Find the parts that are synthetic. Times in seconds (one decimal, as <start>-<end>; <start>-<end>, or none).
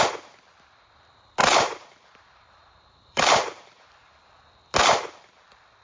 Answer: 1.4-4.3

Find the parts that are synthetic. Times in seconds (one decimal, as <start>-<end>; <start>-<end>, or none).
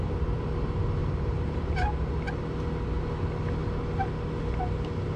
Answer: 1.0-2.1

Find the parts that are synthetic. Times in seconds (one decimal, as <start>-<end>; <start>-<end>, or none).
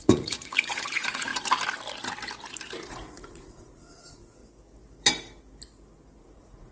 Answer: 0.0-1.3; 2.9-4.4; 6.2-6.7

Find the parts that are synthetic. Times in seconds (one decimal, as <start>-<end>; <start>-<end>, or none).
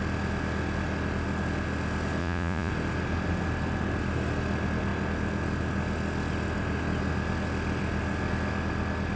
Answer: 2.2-2.7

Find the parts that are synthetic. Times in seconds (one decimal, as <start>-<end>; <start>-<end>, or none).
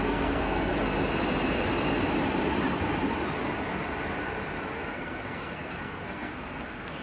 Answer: 0.0-0.7; 4.7-7.0